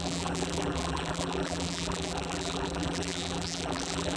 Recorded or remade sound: remade